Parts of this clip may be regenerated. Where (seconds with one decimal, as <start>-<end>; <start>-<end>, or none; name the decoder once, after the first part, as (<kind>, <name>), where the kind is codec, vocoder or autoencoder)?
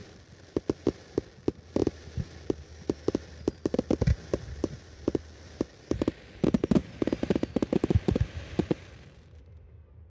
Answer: 0.0-0.6 (vocoder, BigVGAN v2); 1.8-5.6; 6.8-9.4